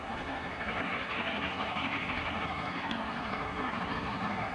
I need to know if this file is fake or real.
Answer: fake